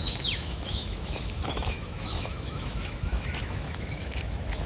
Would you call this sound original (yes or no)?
no